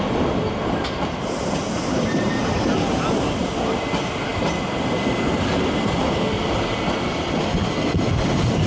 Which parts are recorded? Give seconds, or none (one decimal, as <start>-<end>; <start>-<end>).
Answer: 0.0-8.7